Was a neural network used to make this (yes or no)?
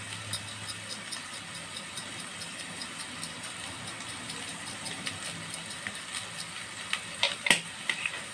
no